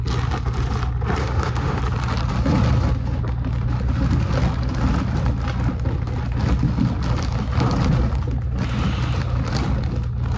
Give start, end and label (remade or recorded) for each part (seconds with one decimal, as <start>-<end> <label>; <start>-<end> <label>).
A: 0.0-1.2 recorded; 1.2-1.8 remade; 1.8-10.4 recorded